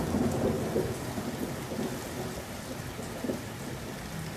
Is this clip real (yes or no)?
yes